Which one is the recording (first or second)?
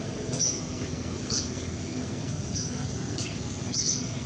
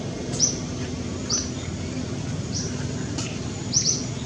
second